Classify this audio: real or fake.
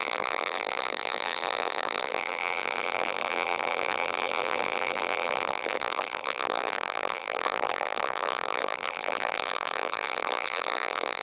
fake